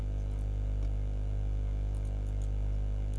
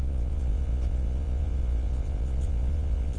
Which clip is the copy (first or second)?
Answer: second